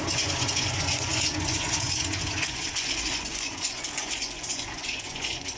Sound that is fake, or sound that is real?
fake